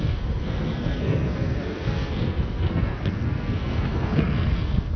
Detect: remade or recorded remade